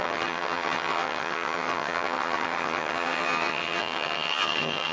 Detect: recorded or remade remade